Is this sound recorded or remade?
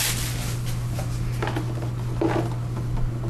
recorded